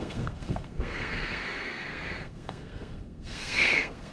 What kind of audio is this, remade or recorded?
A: remade